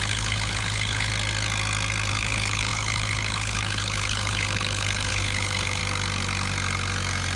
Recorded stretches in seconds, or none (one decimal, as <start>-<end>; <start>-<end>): 1.1-2.1; 5.8-7.4